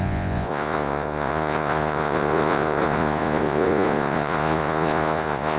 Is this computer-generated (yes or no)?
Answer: yes